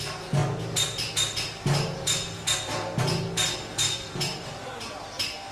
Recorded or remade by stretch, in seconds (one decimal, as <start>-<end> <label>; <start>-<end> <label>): 0.0-3.7 recorded; 3.7-4.7 remade; 4.7-5.5 recorded